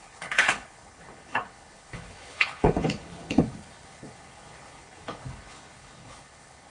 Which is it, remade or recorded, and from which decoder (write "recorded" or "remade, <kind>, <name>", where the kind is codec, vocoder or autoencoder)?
remade, codec, HILCodec